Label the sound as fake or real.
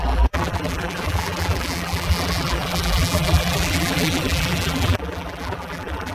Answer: fake